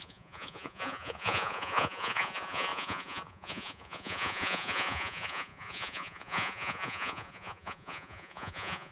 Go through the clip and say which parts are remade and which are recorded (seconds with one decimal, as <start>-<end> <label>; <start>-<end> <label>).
0.0-8.9 remade